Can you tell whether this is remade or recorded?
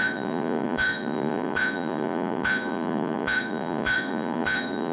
remade